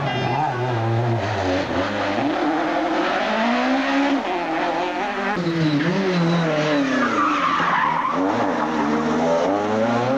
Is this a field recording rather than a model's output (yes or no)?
yes